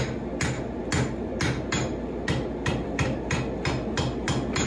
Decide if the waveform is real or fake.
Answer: real